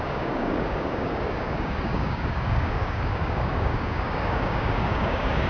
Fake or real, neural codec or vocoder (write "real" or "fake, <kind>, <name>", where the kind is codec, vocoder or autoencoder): fake, codec, DAC